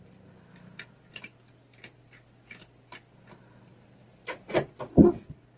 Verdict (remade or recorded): recorded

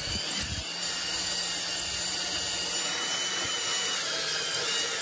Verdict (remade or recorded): recorded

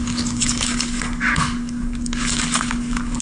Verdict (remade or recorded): remade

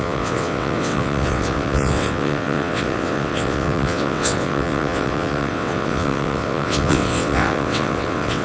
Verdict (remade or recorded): remade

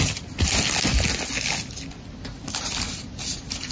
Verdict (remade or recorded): recorded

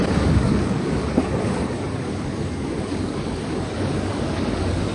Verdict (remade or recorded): remade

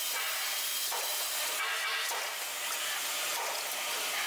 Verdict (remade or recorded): recorded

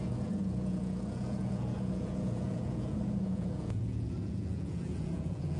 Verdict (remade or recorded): remade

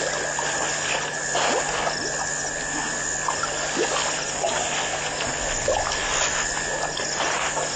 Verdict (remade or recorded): recorded